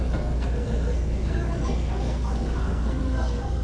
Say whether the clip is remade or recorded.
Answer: remade